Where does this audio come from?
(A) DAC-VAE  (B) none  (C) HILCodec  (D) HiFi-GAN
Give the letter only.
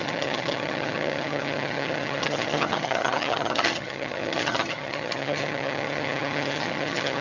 D